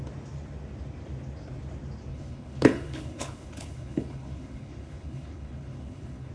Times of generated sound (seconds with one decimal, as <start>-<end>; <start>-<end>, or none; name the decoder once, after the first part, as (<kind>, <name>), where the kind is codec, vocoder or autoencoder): 2.1-6.3 (codec, HILCodec)